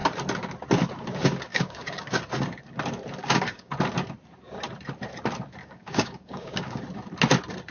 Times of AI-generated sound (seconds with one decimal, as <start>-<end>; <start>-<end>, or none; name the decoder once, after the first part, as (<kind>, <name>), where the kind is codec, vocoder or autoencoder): 1.5-2.2 (codec, DAC); 3.2-3.7; 5.6-6.8